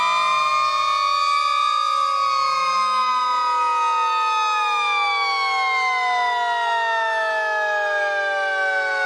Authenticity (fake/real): real